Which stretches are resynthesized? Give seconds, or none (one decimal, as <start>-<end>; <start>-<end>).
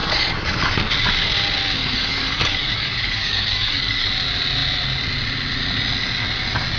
0.0-0.9; 1.8-4.1